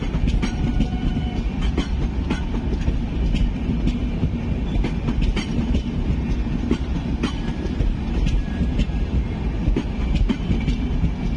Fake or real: fake